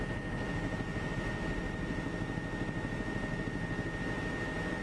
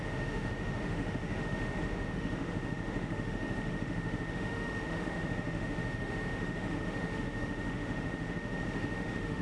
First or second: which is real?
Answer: first